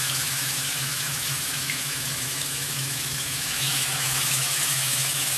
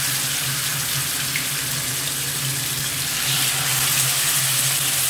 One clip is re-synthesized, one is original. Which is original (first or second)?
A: second